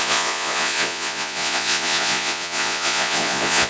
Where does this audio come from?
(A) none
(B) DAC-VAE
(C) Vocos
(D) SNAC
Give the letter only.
C